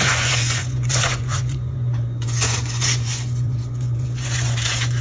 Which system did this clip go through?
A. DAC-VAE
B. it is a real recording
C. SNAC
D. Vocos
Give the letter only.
D